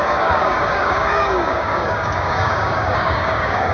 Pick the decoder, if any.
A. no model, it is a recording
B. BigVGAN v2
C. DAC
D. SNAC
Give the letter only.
C